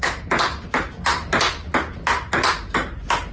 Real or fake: real